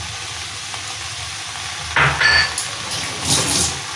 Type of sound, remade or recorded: recorded